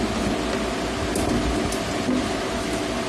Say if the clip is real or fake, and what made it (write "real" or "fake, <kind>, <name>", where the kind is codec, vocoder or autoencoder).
real